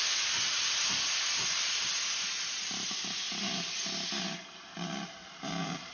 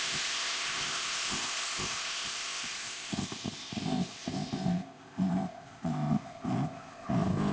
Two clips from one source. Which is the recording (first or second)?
first